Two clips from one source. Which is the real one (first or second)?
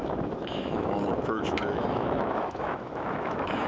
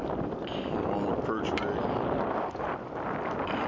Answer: second